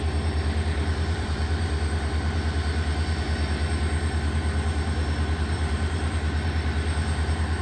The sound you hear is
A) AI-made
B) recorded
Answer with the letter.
A